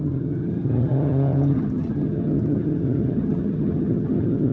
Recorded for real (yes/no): no